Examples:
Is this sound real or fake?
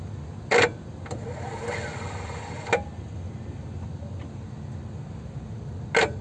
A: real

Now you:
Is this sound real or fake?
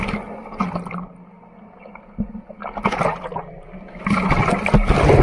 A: real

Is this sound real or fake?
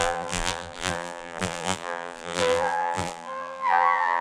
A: fake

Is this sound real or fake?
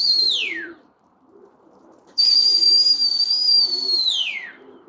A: fake